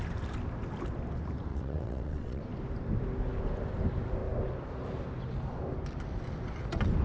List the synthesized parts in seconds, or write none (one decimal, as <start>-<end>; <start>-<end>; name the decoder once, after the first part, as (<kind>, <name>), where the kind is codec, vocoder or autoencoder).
1.5-2.4 (vocoder, WaveNeXt)